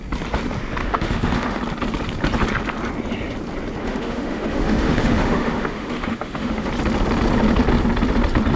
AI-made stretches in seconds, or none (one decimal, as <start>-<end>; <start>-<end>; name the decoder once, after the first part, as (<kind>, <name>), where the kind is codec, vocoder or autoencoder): 0.8-1.6 (autoencoder, DAC-VAE); 3.8-6.7